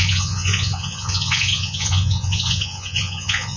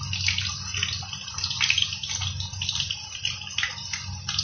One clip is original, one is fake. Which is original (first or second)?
second